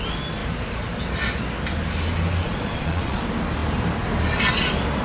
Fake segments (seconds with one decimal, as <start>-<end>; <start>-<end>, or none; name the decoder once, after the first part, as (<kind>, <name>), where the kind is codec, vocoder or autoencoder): 2.4-3.2 (vocoder, Vocos)